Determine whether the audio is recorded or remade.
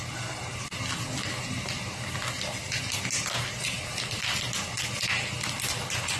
recorded